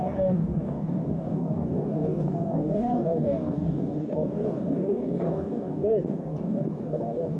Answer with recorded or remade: remade